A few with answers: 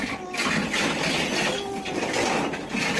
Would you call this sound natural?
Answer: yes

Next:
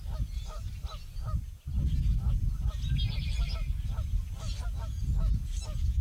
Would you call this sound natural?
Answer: yes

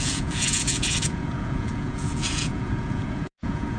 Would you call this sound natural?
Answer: no